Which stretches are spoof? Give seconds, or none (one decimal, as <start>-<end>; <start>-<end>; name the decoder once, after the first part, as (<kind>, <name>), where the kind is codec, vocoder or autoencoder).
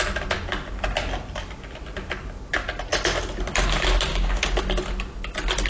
4.1-4.6 (codec, DAC)